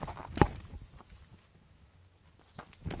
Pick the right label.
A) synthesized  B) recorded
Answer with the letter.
B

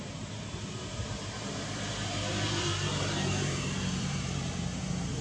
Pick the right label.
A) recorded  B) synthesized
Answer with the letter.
B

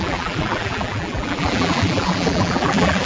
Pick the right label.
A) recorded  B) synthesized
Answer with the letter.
B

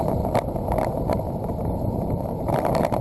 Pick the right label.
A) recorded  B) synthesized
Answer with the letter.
B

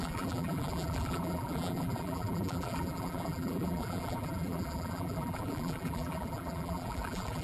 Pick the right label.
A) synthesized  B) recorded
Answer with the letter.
A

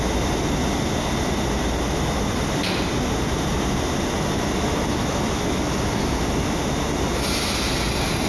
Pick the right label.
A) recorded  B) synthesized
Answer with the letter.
A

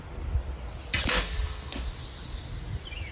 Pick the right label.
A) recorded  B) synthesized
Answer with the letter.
A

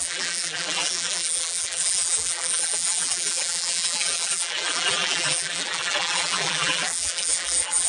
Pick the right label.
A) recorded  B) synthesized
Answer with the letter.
B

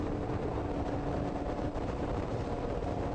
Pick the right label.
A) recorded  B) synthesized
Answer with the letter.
B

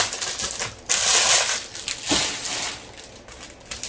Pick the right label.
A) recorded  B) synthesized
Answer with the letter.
A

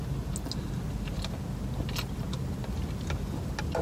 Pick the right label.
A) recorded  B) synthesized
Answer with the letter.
A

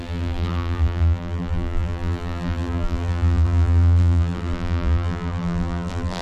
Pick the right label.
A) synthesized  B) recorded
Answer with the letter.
A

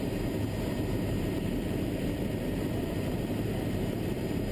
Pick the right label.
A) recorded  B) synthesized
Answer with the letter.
B